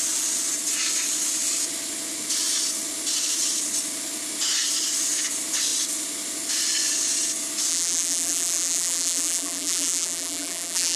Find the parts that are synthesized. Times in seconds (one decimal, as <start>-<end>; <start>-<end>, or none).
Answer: 7.7-11.0